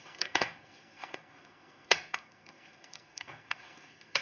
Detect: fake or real fake